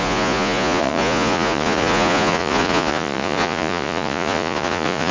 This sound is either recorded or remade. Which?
remade